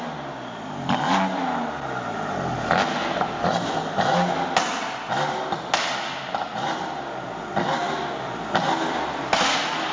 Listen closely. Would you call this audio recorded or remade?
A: recorded